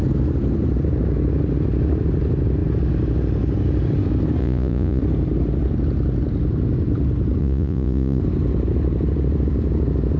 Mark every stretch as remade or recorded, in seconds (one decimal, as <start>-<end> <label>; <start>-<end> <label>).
0.0-4.4 recorded; 4.4-5.0 remade; 5.0-7.4 recorded; 7.4-8.2 remade; 8.2-10.2 recorded